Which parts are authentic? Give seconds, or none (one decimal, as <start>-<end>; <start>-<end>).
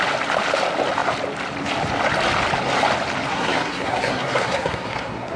0.0-3.3